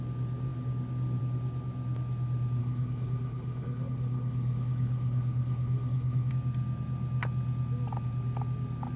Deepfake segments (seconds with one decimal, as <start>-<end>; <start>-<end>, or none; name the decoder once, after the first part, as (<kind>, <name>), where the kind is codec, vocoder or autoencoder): 2.6-6.3 (codec, HILCodec)